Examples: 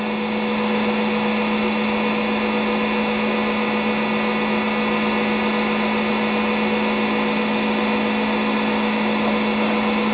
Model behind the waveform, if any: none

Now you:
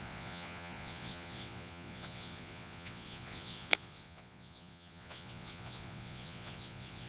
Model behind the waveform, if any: vocoder, Vocos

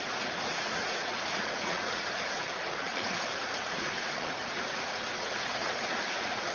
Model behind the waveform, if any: vocoder, Vocos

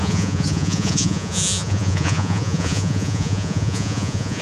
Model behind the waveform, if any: vocoder, Vocos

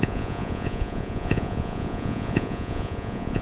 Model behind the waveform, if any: vocoder, Vocos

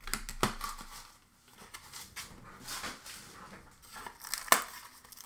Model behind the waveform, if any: none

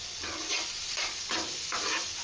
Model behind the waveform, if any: none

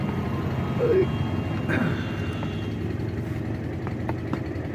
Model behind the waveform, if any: none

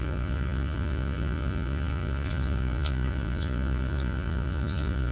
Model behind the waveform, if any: vocoder, Vocos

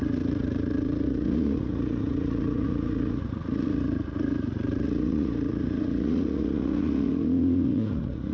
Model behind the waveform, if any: vocoder, Vocos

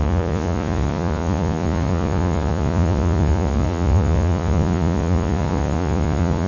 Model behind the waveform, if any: vocoder, Vocos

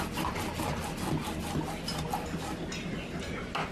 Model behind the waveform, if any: none